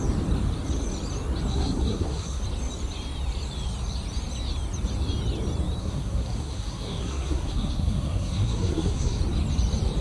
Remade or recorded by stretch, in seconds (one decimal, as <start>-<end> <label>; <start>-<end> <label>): 0.0-1.5 recorded; 1.5-2.4 remade; 2.4-5.8 recorded; 5.8-9.2 remade; 9.2-10.0 recorded